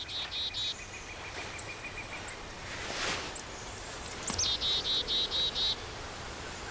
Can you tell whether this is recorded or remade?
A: recorded